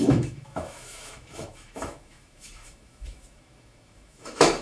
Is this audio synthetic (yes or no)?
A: yes